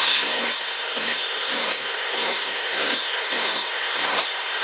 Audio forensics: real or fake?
fake